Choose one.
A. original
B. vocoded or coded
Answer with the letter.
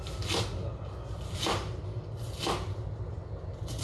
A